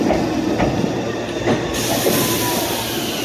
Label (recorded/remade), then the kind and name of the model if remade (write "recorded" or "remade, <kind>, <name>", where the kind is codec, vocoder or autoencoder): recorded